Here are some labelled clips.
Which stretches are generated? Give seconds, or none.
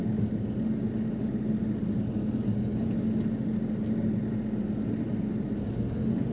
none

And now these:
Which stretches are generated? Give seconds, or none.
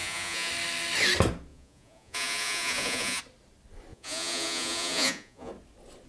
0.0-0.5 (vocoder, Vocos); 1.5-3.2; 3.9-5.5